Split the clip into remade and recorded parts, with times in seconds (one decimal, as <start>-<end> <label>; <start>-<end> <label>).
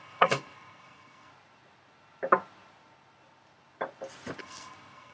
0.0-1.3 remade; 1.3-4.4 recorded; 4.4-5.1 remade